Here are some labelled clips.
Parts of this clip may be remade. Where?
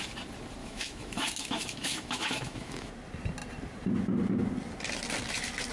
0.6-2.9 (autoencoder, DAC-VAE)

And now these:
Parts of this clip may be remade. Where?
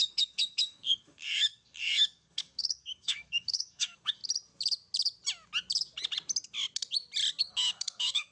0.0-4.2 (codec, DAC); 7.4-8.3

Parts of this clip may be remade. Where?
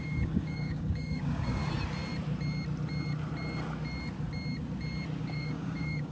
0.0-1.6 (codec, DAC); 5.2-6.1